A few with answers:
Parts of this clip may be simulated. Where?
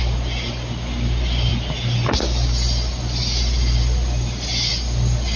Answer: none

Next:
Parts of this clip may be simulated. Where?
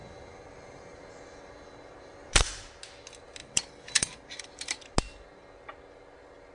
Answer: 0.0-2.4 (vocoder, BigVGAN v2); 3.4-4.8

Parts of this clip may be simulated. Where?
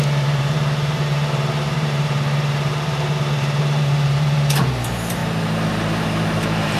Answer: 0.0-5.2 (vocoder, BigVGAN v2); 5.7-6.8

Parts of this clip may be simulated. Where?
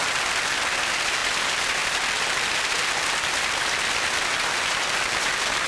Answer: none